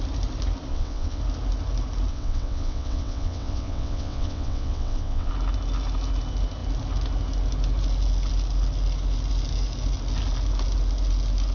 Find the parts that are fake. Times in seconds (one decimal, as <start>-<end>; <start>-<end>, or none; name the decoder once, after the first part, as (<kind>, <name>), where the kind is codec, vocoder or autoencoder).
0.7-1.2 (vocoder, WaveNeXt); 2.1-5.3